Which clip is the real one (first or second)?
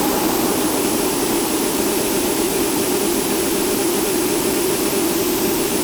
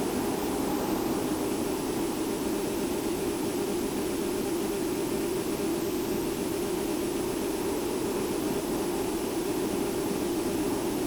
second